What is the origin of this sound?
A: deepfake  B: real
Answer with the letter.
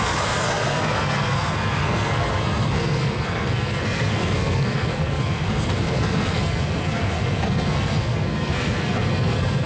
A